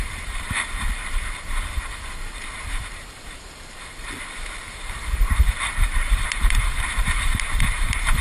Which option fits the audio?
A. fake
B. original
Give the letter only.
A